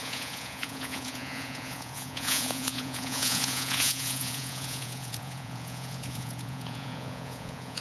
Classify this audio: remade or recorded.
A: remade